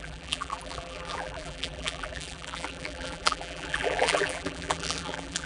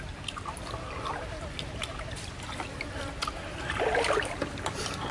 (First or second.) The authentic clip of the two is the second